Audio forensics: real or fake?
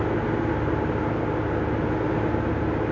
real